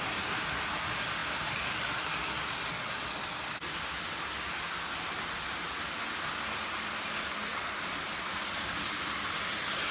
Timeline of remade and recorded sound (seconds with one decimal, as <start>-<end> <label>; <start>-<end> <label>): 0.0-9.9 recorded